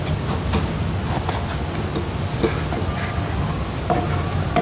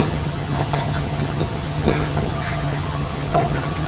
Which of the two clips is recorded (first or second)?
first